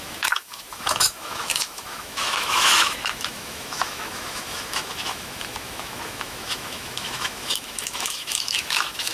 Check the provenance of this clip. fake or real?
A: fake